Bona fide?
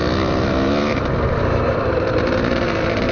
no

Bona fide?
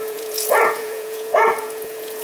no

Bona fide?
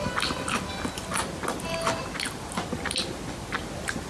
yes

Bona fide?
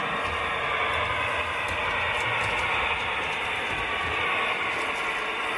yes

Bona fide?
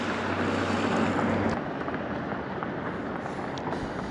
yes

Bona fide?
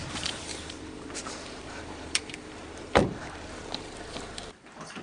no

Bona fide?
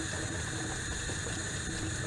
yes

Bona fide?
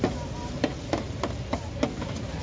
yes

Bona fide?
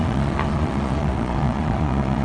no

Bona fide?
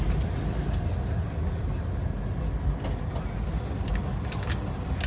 yes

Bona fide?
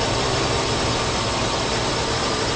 no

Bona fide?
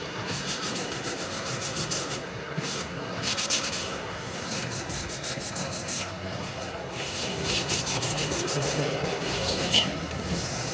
no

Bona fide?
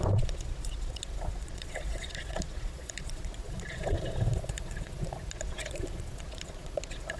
no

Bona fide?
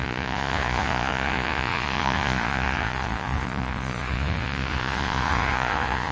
no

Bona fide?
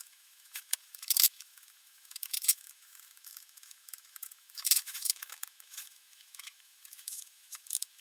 no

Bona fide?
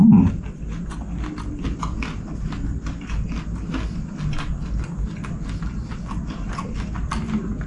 yes